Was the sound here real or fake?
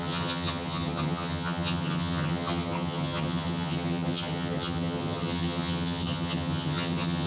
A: fake